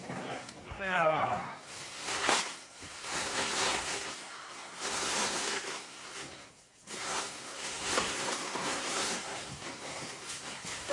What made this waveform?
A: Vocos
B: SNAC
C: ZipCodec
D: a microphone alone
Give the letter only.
B